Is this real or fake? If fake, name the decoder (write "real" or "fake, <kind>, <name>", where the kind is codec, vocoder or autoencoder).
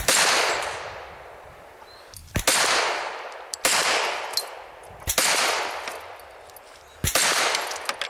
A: real